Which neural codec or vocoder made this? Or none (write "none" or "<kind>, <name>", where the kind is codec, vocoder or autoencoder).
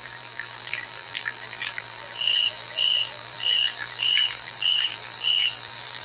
vocoder, BigVGAN v2